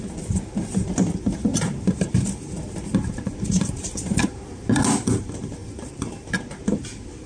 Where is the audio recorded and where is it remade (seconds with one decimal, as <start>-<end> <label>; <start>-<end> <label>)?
0.0-1.5 recorded; 1.5-4.7 remade; 4.7-5.6 recorded; 5.6-6.3 remade; 6.3-7.3 recorded